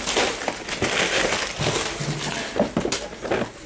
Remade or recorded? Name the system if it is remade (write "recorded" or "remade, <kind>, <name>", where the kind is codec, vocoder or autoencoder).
recorded